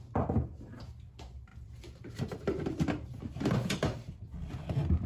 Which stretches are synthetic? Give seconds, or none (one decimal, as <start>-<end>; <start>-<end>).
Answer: 1.5-4.6